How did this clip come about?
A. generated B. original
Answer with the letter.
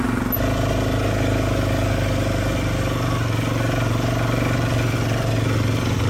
B